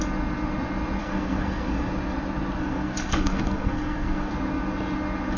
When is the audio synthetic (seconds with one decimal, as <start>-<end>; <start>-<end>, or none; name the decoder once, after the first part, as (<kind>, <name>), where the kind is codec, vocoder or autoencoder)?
1.0-1.9 (codec, SNAC); 2.6-4.3

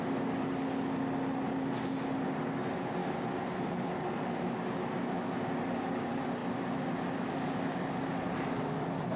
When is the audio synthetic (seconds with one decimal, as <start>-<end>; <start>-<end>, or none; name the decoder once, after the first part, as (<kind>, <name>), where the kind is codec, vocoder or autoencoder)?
none

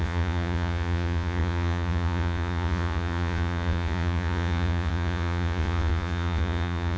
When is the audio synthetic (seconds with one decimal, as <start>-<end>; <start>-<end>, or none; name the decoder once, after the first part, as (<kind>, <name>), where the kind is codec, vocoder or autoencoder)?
0.0-7.0 (vocoder, Vocos)

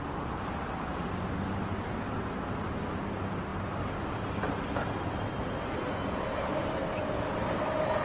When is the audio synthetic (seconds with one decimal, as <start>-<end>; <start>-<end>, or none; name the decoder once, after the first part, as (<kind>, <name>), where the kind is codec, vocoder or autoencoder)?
none